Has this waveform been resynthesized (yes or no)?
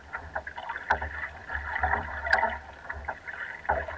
no